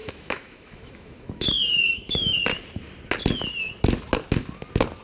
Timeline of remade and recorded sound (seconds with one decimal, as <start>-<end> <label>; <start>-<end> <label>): 0.0-2.4 remade; 2.4-5.0 recorded

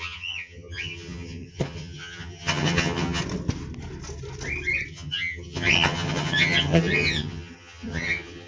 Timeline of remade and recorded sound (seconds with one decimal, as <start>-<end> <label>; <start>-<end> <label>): 0.0-3.2 remade; 3.2-4.9 recorded; 4.9-8.5 remade

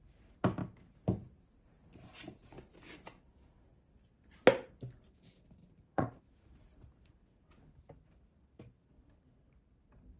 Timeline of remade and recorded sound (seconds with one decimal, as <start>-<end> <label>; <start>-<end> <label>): 0.0-5.6 recorded; 5.6-6.2 remade; 6.2-10.2 recorded

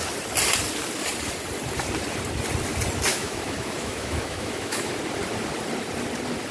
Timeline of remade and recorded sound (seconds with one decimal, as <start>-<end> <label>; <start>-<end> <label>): 0.0-3.1 recorded; 3.1-4.9 remade; 4.9-6.5 recorded

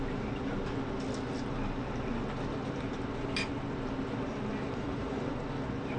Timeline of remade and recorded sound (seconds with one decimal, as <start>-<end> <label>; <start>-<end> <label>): 0.0-4.5 recorded; 4.5-5.3 remade; 5.3-6.0 recorded

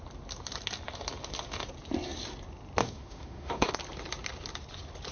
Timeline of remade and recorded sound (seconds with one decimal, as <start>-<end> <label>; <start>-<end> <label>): 0.0-2.8 recorded; 2.8-3.7 remade; 3.7-5.1 recorded

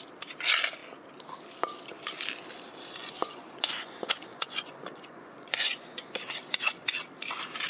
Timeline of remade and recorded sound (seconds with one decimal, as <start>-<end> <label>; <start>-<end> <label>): 0.0-3.0 recorded; 3.0-7.0 remade; 7.0-7.7 recorded